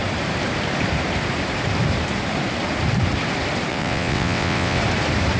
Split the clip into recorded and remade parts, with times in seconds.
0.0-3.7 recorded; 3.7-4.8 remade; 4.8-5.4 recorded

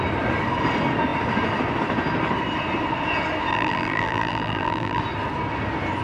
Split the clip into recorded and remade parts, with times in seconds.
0.0-3.5 recorded; 3.5-5.0 remade; 5.0-6.0 recorded

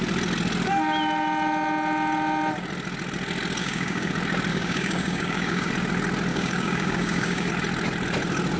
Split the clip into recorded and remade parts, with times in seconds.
0.0-3.6 recorded; 3.6-4.1 remade; 4.1-4.5 recorded; 4.5-5.7 remade; 5.7-6.3 recorded; 6.3-7.5 remade; 7.5-8.6 recorded

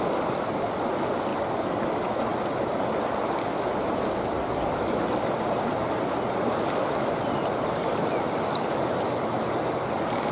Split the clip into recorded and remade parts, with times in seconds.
0.0-10.3 recorded

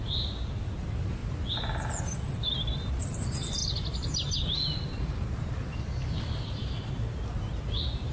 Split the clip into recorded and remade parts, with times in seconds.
0.0-8.1 recorded

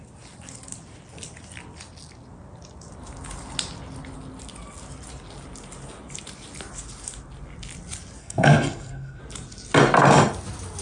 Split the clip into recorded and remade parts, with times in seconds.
0.0-8.2 recorded; 8.2-9.2 remade; 9.2-10.8 recorded